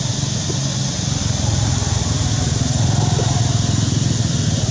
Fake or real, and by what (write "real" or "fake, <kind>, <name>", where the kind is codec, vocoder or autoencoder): real